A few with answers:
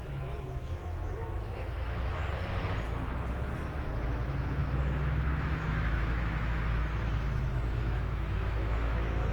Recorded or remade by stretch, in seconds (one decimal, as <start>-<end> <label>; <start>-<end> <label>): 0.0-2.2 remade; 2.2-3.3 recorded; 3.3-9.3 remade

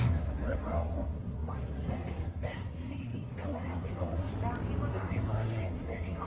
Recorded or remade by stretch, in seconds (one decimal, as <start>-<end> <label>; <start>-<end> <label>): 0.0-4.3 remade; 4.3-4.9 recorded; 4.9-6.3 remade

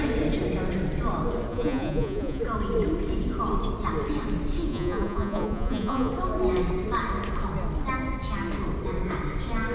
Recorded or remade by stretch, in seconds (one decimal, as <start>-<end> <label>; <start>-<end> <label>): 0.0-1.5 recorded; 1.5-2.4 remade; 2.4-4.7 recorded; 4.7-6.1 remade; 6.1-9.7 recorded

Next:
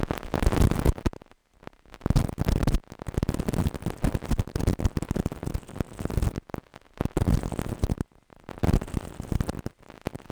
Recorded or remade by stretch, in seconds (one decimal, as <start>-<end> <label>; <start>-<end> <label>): 0.0-10.3 recorded

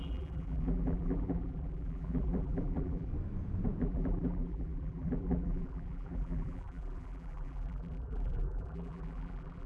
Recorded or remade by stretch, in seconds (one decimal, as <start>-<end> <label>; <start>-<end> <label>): 0.0-3.1 remade; 3.1-3.8 recorded; 3.8-9.7 remade

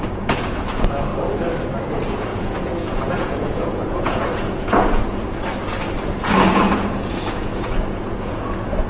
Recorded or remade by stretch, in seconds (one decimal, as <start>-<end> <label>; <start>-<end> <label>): 0.0-1.1 remade; 1.1-1.8 recorded; 1.8-5.0 remade; 5.0-6.3 recorded; 6.3-8.9 remade